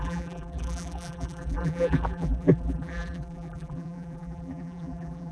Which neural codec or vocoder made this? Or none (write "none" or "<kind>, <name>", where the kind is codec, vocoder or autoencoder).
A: vocoder, BigVGAN v2